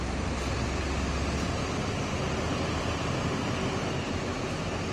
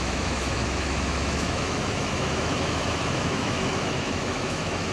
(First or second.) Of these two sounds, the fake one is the second